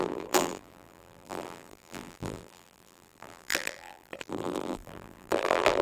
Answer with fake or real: fake